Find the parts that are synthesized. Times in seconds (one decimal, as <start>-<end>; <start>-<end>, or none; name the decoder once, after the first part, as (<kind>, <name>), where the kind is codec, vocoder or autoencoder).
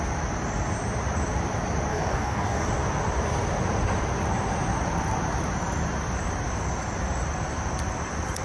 1.9-2.7 (codec, DAC)